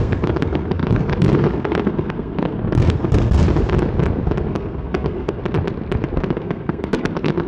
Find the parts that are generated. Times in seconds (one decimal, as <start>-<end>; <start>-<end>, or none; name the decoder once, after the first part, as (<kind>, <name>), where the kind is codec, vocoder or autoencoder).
0.0-3.4 (codec, SNAC); 4.4-5.4; 6.3-7.5